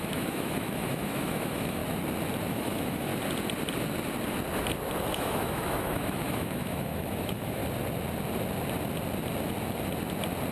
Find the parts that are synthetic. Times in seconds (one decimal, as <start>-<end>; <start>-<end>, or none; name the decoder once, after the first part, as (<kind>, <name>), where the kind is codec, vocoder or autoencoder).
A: 0.0-1.8 (autoencoder, DAC-VAE); 2.5-3.1; 5.1-7.6